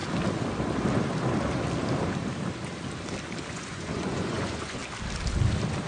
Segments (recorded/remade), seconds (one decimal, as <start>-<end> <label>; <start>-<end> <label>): 0.0-3.5 recorded; 3.5-4.8 remade; 4.8-5.9 recorded